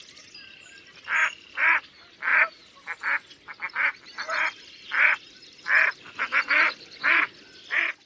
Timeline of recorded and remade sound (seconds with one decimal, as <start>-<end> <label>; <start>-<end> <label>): 0.0-2.3 recorded; 2.3-7.0 remade; 7.0-8.1 recorded